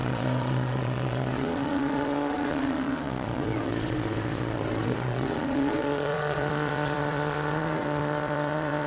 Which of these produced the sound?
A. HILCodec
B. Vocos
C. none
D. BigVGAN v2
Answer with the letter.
B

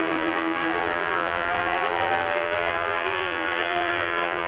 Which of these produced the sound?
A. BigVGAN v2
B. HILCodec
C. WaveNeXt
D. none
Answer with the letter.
A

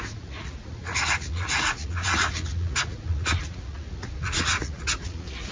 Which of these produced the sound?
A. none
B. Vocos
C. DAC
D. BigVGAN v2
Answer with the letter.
B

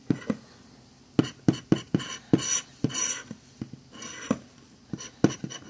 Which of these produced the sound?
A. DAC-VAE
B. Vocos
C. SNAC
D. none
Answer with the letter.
D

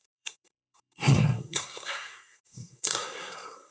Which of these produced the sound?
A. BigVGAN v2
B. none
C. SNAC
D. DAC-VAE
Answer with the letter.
C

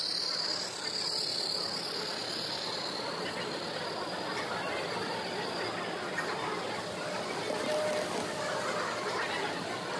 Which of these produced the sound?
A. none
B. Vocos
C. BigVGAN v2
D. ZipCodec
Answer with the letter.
A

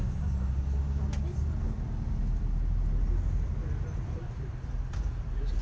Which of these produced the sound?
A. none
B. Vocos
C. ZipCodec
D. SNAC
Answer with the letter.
A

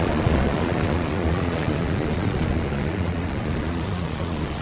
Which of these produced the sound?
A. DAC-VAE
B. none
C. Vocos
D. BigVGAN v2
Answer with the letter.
C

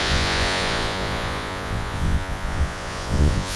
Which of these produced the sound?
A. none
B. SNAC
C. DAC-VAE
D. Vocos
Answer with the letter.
D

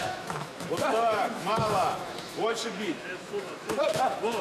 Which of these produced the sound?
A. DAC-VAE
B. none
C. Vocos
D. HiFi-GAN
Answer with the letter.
A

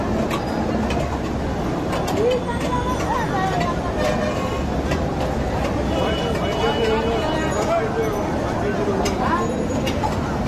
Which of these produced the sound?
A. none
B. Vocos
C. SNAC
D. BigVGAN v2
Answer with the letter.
A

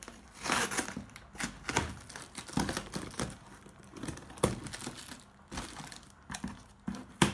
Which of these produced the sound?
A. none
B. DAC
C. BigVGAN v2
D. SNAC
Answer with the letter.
A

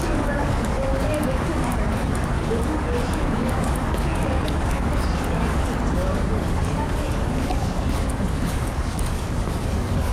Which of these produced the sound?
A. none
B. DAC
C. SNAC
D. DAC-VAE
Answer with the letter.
B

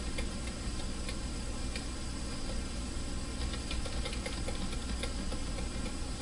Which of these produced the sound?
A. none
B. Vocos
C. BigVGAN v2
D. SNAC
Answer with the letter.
A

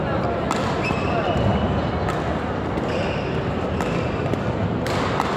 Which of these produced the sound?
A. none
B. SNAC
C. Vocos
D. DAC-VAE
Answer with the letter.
A